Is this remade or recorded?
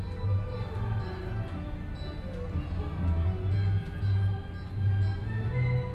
recorded